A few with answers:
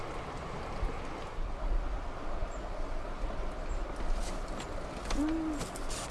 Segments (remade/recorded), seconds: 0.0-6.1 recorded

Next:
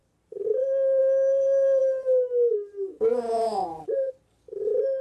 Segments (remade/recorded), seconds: 0.0-1.8 remade; 1.8-5.0 recorded

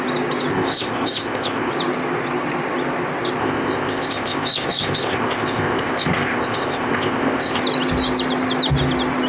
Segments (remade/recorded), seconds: 0.0-0.5 recorded; 0.5-1.7 remade; 1.7-3.4 recorded; 3.4-7.6 remade; 7.6-9.3 recorded

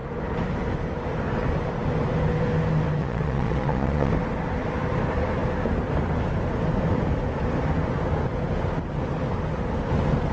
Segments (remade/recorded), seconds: 0.0-3.0 recorded; 3.0-4.1 remade; 4.1-10.3 recorded